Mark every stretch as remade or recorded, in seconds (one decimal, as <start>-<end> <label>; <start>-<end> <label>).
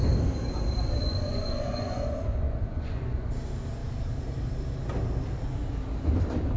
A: 0.0-1.0 recorded; 1.0-3.3 remade; 3.3-6.6 recorded